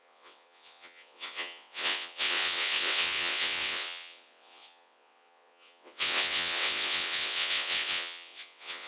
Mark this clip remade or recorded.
remade